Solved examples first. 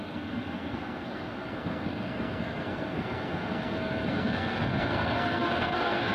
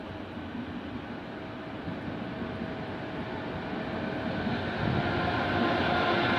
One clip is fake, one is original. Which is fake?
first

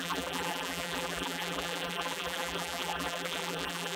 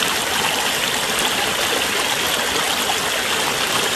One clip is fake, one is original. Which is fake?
first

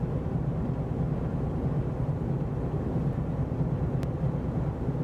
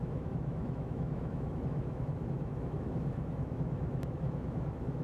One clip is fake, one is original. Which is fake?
second